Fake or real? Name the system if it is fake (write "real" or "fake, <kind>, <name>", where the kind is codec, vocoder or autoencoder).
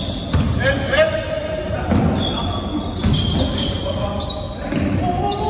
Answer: real